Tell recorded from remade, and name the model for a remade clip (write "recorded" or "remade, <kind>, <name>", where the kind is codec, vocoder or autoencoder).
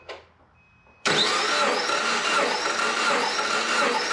recorded